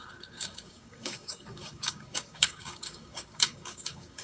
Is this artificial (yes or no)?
yes